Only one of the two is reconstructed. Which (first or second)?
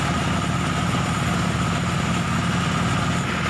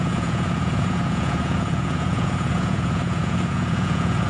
second